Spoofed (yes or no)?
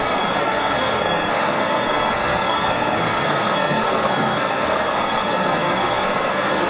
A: yes